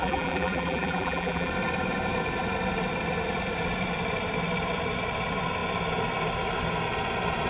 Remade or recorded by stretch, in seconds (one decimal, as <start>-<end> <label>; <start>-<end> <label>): 0.0-1.5 remade; 1.5-7.5 recorded